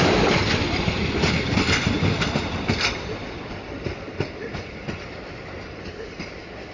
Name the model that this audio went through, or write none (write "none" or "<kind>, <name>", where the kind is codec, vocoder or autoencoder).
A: vocoder, BigVGAN v2